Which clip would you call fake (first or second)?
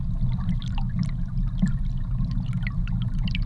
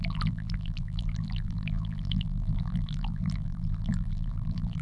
second